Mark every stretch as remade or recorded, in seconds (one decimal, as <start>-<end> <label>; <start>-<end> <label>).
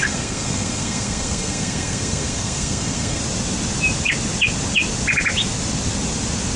0.0-3.2 remade; 3.2-6.6 recorded